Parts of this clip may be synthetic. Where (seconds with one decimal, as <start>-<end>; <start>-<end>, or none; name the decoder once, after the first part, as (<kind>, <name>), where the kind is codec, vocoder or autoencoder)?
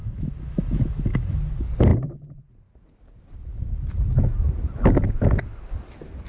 0.0-1.4 (autoencoder, DAC-VAE)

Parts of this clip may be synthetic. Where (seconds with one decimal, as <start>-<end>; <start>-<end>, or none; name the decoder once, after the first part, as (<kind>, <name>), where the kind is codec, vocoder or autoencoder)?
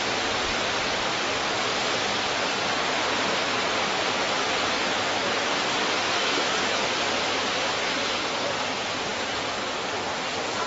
6.2-6.8 (autoencoder, DAC-VAE)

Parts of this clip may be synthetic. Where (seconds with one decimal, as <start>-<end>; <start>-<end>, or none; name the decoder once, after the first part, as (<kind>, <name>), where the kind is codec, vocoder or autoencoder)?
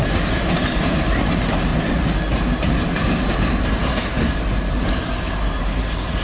0.0-1.7 (vocoder, BigVGAN v2); 2.6-6.2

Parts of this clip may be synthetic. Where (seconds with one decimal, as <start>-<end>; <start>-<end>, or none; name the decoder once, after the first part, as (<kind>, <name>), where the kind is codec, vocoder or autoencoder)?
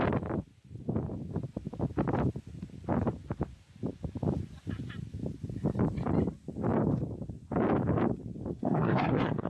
8.5-9.5 (codec, SNAC)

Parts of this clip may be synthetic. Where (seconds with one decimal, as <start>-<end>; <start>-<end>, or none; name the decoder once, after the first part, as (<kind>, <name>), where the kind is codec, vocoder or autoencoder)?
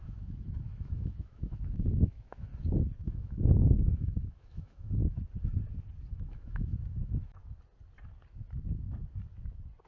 0.0-2.5 (autoencoder, DAC-VAE); 3.0-5.0; 6.1-7.4